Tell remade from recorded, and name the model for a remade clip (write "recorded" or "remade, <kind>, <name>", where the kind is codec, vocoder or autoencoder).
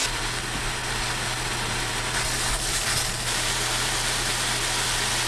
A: recorded